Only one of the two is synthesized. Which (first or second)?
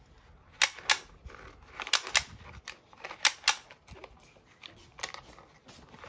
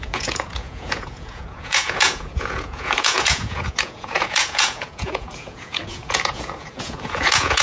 second